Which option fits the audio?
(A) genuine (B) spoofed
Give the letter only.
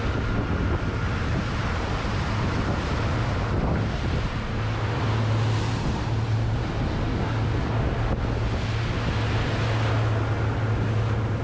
A